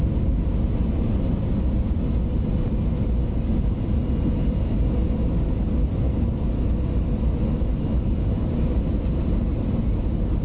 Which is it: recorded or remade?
recorded